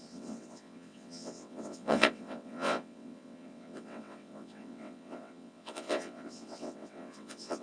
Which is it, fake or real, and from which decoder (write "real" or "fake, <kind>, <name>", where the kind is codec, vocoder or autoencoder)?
fake, vocoder, WaveNeXt